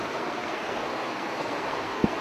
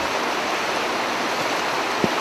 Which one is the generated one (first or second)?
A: first